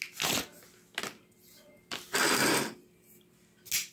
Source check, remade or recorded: recorded